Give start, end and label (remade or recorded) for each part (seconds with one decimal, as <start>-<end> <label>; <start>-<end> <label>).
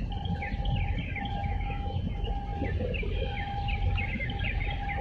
0.0-1.4 recorded; 1.4-2.0 remade; 2.0-5.0 recorded